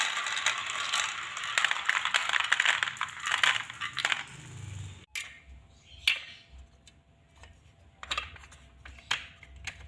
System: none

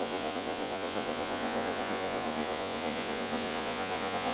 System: vocoder, Vocos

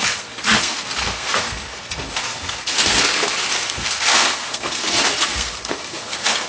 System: codec, SNAC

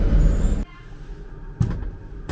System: none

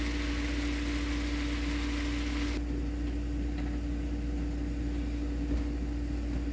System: none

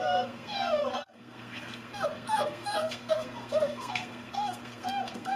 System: codec, SNAC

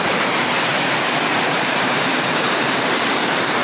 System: vocoder, BigVGAN v2